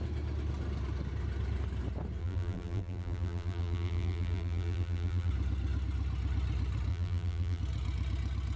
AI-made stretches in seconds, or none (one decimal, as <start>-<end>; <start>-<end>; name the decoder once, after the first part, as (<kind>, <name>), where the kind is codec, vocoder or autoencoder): 2.2-5.3 (vocoder, BigVGAN v2); 6.9-7.6